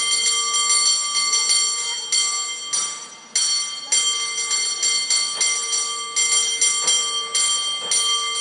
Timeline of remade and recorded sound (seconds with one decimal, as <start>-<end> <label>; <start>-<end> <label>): 0.0-8.4 recorded